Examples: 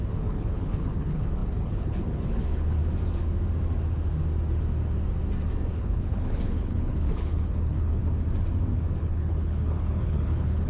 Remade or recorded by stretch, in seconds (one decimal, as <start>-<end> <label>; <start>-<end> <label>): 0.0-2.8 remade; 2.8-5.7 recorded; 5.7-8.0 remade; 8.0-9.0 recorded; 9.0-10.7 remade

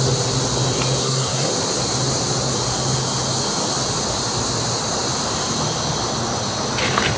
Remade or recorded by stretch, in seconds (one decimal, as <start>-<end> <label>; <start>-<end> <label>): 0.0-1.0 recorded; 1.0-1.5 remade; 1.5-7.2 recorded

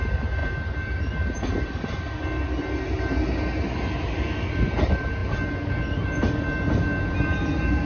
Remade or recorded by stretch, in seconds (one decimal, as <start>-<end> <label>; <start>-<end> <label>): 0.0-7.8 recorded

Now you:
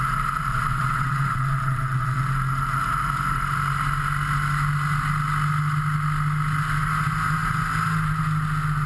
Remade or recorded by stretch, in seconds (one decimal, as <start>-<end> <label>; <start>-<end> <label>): 0.0-0.5 recorded; 0.5-2.2 remade; 2.2-8.9 recorded

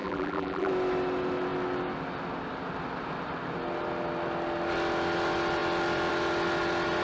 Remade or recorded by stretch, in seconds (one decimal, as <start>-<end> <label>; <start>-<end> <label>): 0.0-0.7 remade; 0.7-7.0 recorded

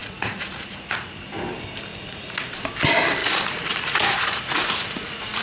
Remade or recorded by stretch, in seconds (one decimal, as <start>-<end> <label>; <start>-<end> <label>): 0.0-1.2 remade; 1.2-1.9 recorded; 1.9-2.5 remade; 2.5-3.2 recorded; 3.2-5.4 remade

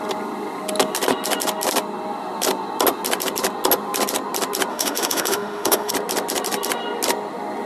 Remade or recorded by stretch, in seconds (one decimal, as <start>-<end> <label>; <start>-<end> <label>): 0.0-4.7 recorded; 4.7-5.9 remade; 5.9-7.7 recorded